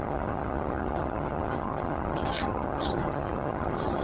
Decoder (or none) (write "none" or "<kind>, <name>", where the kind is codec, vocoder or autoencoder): vocoder, HiFi-GAN